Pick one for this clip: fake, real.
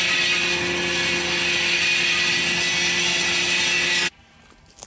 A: real